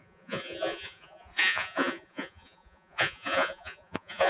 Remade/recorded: remade